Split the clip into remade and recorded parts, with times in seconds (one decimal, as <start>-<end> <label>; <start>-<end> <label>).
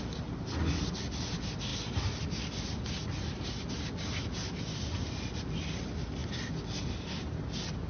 0.0-7.9 recorded